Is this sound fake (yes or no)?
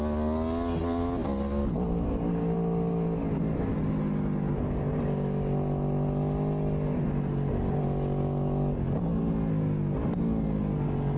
no